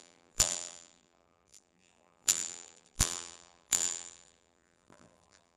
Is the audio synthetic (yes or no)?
yes